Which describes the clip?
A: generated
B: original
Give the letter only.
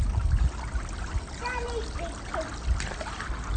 B